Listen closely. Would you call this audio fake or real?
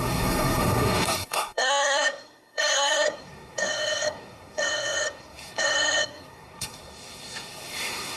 fake